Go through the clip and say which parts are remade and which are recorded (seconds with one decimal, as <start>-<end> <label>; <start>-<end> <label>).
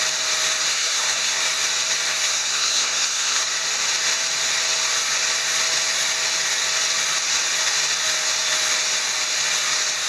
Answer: 0.0-0.7 recorded; 0.7-1.4 remade; 1.4-2.1 recorded; 2.1-3.5 remade; 3.5-10.1 recorded